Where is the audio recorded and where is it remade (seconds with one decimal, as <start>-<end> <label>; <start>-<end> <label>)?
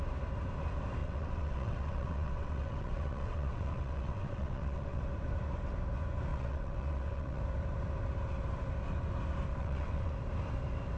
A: 0.0-1.0 recorded; 1.0-5.0 remade; 5.0-6.3 recorded; 6.3-7.4 remade; 7.4-9.5 recorded; 9.5-10.1 remade; 10.1-11.0 recorded